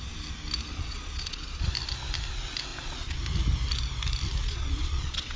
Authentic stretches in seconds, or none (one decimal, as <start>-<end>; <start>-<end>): 0.0-0.7; 1.7-2.7; 3.2-4.4